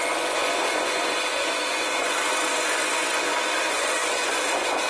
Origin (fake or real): fake